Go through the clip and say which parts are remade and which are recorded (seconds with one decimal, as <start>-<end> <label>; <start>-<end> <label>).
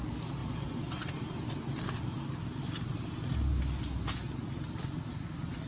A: 0.0-5.7 recorded